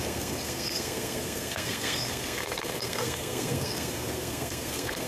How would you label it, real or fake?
fake